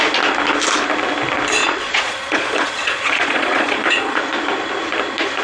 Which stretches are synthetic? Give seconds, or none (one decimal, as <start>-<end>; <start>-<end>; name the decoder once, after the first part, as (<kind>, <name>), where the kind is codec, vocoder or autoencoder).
1.6-4.2 (vocoder, Vocos)